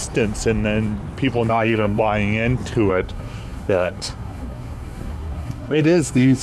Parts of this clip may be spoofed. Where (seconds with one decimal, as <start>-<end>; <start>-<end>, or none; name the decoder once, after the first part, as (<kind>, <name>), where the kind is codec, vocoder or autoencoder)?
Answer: 1.5-2.0 (codec, SNAC); 2.9-6.4